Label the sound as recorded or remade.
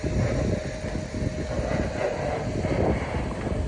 recorded